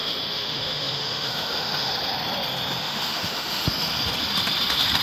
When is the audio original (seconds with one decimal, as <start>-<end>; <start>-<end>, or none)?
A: 1.9-2.8; 3.7-5.0

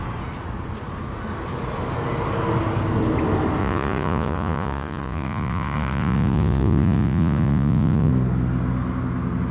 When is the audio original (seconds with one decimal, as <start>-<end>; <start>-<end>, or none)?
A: 0.0-3.6; 8.1-9.5

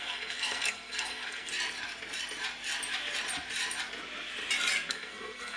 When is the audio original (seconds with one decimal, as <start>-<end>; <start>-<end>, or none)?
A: 1.5-4.9

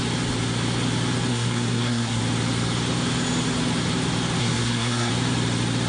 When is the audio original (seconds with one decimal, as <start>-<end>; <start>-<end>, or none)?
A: 0.0-1.3; 2.2-4.4; 5.1-5.9